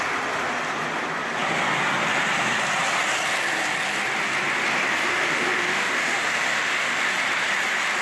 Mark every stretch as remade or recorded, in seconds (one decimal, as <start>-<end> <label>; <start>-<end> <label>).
0.0-4.9 recorded; 4.9-7.0 remade; 7.0-8.0 recorded